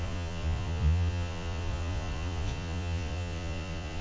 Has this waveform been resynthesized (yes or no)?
yes